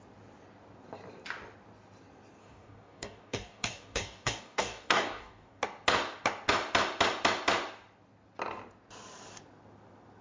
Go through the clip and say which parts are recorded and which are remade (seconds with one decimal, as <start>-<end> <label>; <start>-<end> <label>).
0.0-2.4 recorded; 2.4-5.6 remade; 5.6-10.2 recorded